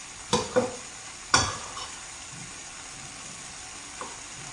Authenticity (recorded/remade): remade